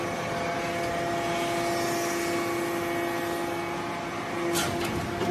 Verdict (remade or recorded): recorded